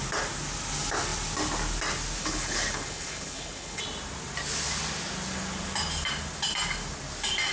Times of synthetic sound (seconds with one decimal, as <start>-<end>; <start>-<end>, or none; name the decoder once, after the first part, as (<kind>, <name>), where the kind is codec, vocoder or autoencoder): 2.2-3.8 (codec, HILCodec)